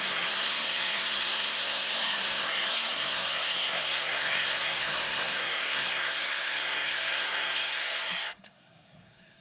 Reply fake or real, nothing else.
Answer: fake